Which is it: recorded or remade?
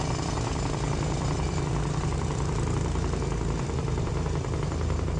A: recorded